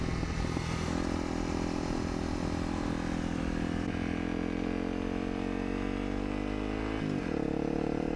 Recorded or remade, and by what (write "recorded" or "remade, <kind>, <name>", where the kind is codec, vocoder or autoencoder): recorded